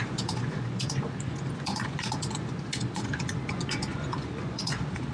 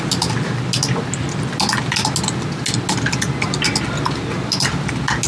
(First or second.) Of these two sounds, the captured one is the second